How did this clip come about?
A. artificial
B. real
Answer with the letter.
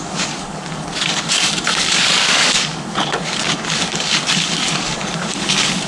A